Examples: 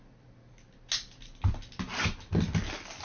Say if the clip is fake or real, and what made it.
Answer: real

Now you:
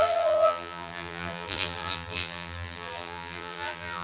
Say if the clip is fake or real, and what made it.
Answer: fake, vocoder, BigVGAN v2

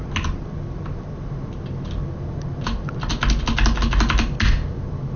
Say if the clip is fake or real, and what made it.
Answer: real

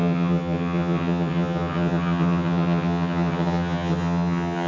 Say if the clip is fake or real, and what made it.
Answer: fake, vocoder, HiFi-GAN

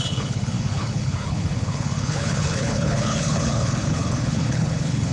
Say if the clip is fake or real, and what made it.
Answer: fake, codec, HILCodec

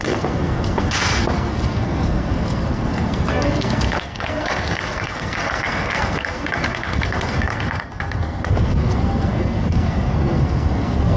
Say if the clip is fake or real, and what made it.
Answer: fake, codec, SNAC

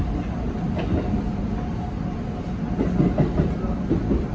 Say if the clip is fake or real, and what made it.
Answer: real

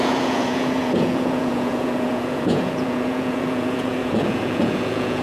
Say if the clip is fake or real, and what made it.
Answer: fake, vocoder, Vocos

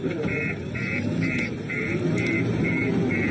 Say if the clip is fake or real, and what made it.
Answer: fake, vocoder, BigVGAN v2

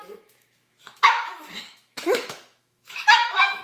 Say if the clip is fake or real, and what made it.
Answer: fake, autoencoder, DAC-VAE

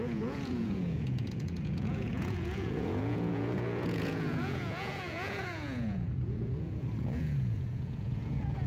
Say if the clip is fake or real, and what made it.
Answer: fake, vocoder, Vocos